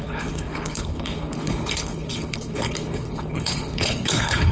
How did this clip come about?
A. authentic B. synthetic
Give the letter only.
B